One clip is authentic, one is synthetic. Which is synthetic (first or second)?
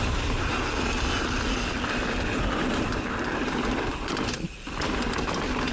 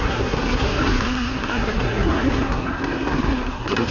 second